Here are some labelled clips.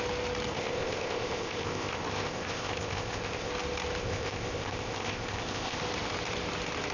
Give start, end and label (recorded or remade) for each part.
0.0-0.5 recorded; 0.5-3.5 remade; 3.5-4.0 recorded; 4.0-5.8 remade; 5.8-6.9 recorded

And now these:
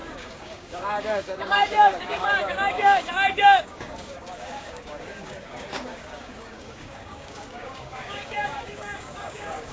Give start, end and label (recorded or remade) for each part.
0.0-9.7 remade

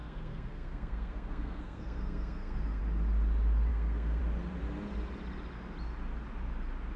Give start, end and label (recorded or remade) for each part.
0.0-2.8 remade; 2.8-3.7 recorded; 3.7-4.2 remade; 4.2-7.0 recorded

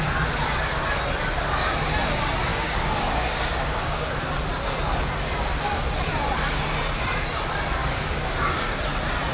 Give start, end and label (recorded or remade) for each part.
0.0-2.5 recorded; 2.5-4.1 remade; 4.1-7.8 recorded; 7.8-8.4 remade; 8.4-9.3 recorded

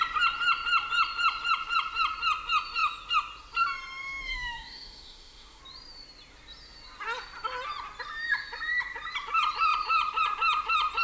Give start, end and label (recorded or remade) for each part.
0.0-4.3 recorded; 4.3-5.6 remade; 5.6-11.0 recorded

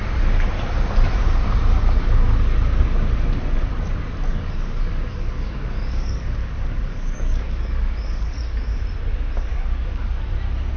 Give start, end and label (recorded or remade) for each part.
0.0-4.3 recorded; 4.3-8.4 remade; 8.4-9.5 recorded; 9.5-10.3 remade; 10.3-10.8 recorded

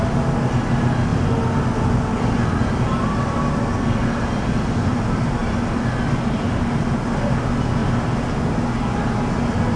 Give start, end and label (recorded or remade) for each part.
0.0-9.8 recorded

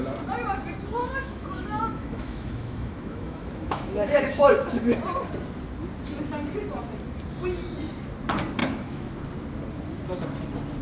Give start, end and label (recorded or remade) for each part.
0.0-1.0 recorded; 1.0-5.0 remade; 5.0-8.6 recorded; 8.6-9.1 remade; 9.1-10.8 recorded